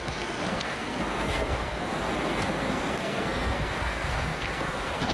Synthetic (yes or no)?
yes